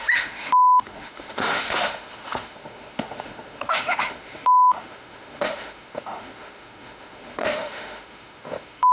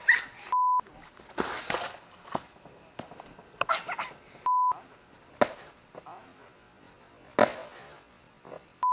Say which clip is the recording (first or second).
second